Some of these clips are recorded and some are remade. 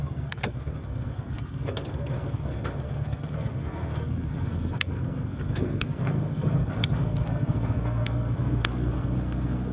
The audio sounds remade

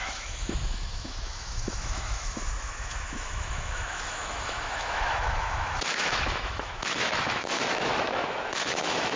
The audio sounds remade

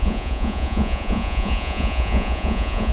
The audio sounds remade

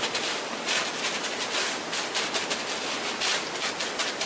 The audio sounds recorded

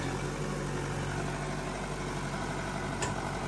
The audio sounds recorded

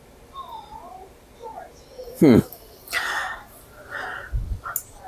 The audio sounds recorded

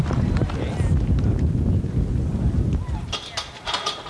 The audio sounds recorded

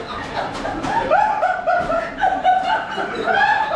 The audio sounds remade